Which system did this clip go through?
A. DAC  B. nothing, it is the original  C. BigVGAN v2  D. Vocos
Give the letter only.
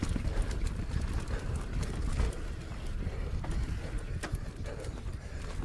B